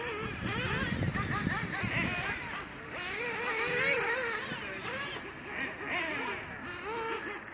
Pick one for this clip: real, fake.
real